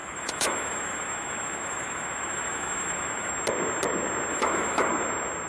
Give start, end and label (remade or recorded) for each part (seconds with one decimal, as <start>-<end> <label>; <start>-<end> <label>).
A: 0.0-3.3 remade; 3.3-4.3 recorded; 4.3-4.9 remade; 4.9-5.5 recorded